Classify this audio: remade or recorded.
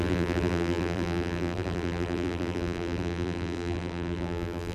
remade